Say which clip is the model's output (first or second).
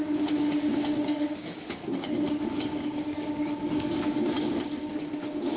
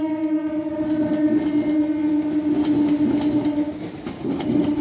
first